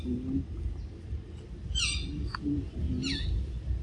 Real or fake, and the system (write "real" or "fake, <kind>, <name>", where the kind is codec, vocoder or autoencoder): real